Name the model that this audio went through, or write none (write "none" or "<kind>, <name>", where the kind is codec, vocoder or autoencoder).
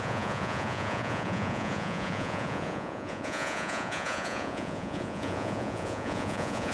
vocoder, Vocos